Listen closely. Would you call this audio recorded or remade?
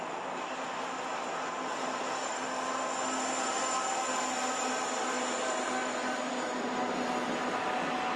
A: recorded